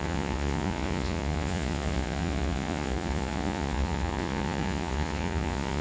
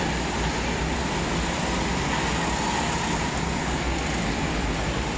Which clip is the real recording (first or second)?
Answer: second